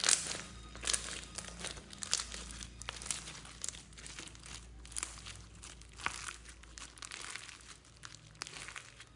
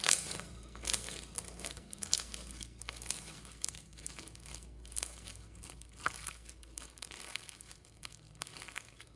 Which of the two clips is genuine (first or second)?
first